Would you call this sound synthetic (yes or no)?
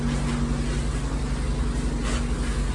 no